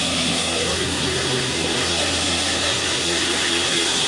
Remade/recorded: remade